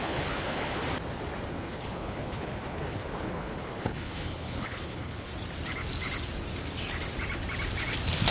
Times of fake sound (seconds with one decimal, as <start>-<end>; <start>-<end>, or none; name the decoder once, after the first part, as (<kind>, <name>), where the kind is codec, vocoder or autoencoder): 0.0-0.8 (codec, HILCodec); 1.5-5.3